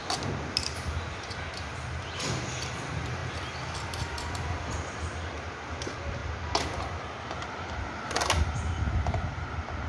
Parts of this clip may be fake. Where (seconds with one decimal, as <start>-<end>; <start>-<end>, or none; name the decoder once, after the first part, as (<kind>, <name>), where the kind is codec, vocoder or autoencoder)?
none